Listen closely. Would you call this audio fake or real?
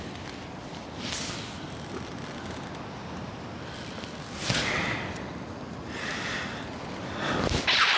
real